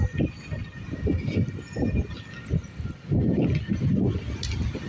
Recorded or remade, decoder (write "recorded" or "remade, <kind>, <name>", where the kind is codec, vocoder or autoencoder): recorded